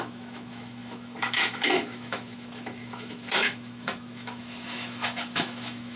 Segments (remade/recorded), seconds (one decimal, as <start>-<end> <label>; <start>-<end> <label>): 0.0-6.0 remade